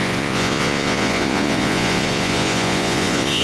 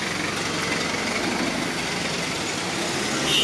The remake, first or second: first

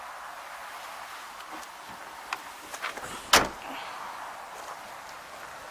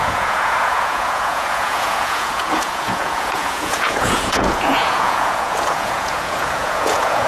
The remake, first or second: second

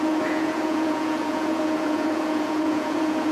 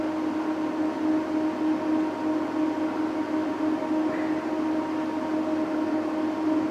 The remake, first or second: first